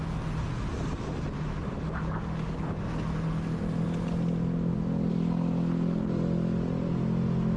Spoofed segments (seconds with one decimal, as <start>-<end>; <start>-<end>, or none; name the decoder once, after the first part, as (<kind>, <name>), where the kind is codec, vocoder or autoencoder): none